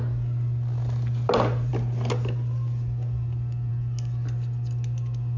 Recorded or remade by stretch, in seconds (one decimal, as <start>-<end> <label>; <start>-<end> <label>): 0.0-5.4 recorded